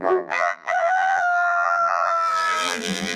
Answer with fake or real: fake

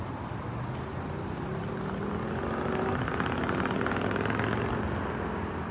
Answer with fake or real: real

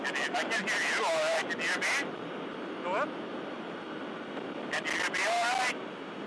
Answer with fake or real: real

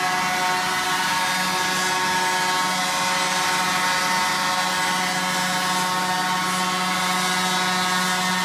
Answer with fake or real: real